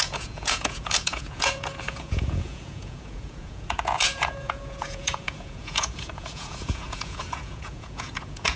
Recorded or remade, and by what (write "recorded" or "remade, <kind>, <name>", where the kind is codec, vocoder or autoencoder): remade, vocoder, Vocos